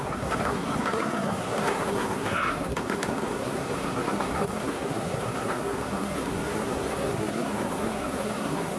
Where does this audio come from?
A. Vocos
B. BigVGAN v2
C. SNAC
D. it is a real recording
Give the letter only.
C